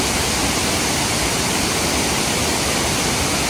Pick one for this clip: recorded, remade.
recorded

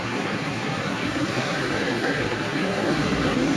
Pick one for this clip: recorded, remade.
remade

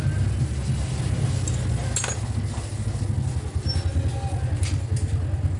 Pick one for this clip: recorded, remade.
recorded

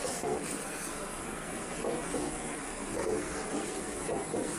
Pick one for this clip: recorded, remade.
remade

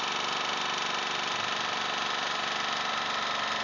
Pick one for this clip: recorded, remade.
recorded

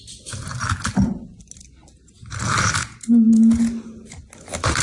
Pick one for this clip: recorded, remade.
recorded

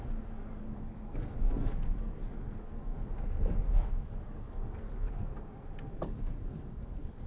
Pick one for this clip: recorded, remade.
remade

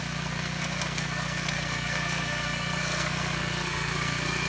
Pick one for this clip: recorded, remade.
remade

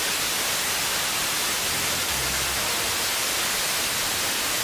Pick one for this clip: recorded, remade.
recorded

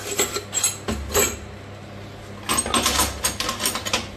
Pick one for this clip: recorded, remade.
recorded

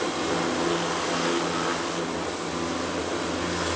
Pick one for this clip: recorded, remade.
recorded